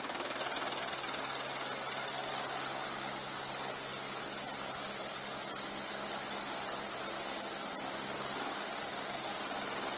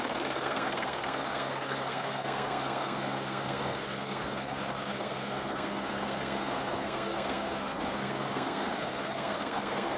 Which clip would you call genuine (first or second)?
first